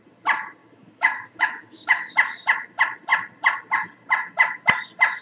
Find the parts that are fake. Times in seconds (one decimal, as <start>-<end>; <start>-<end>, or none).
0.6-2.1

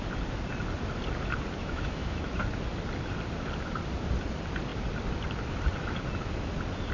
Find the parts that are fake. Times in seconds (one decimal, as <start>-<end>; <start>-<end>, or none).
1.6-2.3

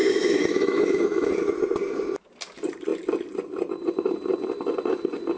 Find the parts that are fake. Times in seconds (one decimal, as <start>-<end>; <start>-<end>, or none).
0.0-1.3

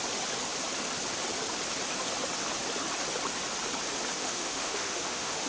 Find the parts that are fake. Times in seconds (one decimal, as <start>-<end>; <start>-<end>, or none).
4.2-5.5

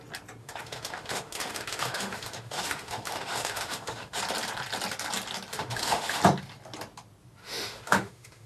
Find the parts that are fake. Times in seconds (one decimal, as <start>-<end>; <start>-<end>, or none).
0.4-4.2; 5.5-6.2; 7.4-8.5

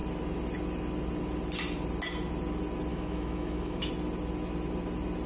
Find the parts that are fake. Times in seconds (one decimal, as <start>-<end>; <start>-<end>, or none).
2.9-3.9

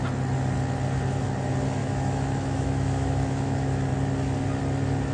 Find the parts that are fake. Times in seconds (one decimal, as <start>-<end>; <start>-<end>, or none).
1.8-3.9